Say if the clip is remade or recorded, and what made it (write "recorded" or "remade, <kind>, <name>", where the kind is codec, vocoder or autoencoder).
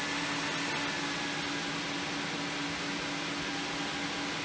recorded